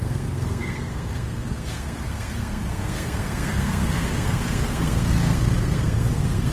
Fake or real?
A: fake